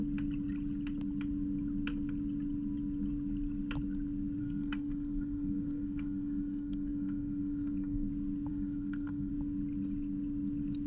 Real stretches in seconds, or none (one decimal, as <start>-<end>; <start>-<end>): 0.0-4.4; 8.1-8.5; 9.3-10.9